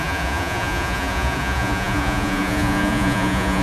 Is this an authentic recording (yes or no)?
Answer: no